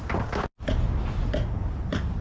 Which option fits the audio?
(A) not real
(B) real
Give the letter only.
B